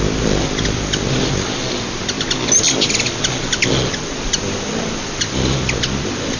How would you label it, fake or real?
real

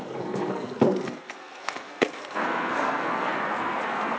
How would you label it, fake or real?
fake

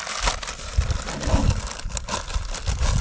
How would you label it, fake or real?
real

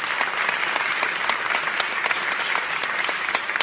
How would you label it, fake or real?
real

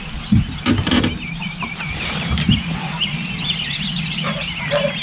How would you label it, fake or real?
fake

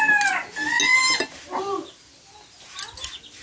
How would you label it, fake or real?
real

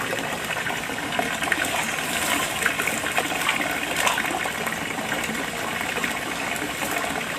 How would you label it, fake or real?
real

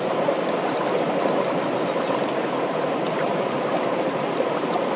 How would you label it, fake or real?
fake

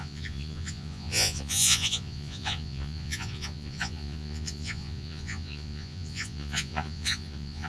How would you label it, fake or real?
fake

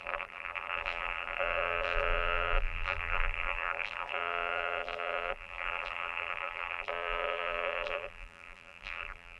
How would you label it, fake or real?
fake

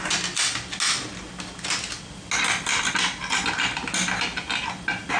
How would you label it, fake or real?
real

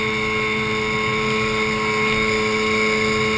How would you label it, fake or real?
real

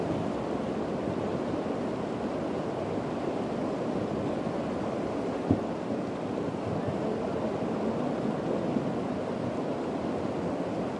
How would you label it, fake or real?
real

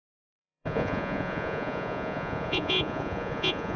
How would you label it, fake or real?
fake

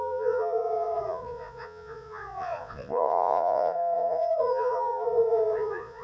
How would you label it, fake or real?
fake